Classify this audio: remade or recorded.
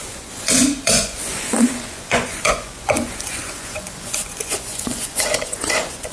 remade